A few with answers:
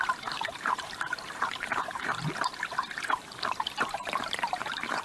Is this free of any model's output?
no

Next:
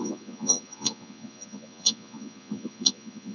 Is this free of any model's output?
no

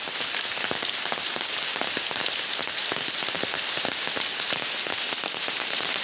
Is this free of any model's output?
yes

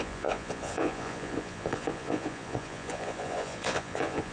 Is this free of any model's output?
no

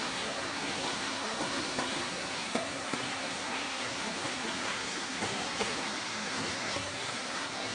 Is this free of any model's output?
no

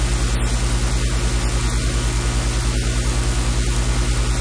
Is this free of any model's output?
yes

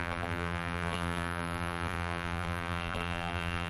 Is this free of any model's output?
no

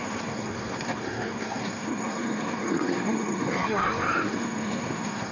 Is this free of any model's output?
no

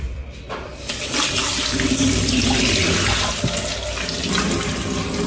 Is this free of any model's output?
yes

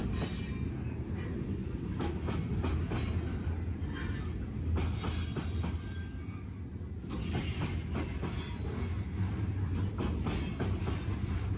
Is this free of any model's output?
yes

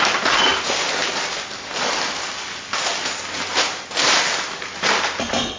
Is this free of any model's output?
yes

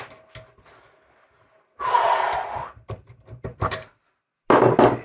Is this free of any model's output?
yes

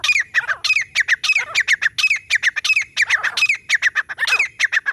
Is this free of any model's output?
yes